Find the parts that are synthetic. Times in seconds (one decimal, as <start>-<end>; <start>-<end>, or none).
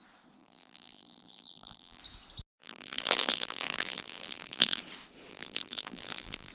0.4-2.0; 2.6-4.8; 5.3-6.5